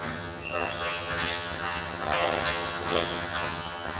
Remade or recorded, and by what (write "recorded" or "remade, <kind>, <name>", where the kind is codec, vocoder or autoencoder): remade, vocoder, HiFi-GAN